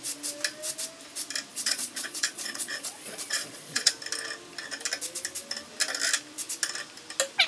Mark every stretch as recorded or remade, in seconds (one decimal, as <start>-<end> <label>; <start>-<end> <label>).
0.0-1.5 recorded; 1.5-3.9 remade; 3.9-7.5 recorded